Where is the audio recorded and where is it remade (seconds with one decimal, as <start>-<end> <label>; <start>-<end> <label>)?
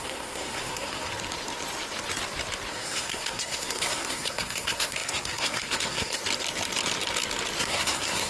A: 0.0-1.1 remade; 1.1-2.7 recorded; 2.7-6.2 remade; 6.2-7.6 recorded; 7.6-8.3 remade